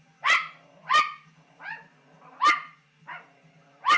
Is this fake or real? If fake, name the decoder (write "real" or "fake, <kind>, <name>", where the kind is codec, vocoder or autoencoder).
real